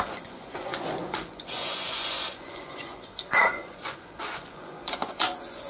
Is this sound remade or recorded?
remade